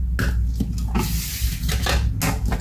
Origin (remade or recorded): recorded